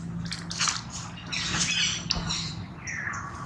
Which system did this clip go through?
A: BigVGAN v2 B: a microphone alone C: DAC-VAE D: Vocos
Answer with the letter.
B